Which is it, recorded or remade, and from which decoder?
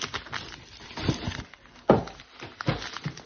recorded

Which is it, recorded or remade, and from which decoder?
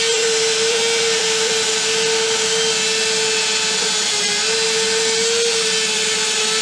recorded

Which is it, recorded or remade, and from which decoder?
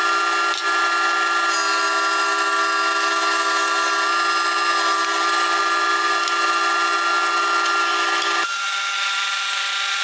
recorded